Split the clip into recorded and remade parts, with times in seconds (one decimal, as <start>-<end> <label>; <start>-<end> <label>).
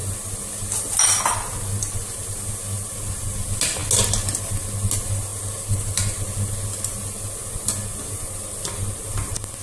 0.0-9.6 recorded